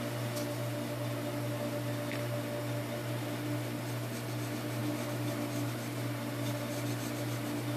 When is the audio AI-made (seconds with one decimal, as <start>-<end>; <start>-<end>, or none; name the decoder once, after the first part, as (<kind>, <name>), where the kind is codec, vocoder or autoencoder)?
4.8-7.8 (vocoder, BigVGAN v2)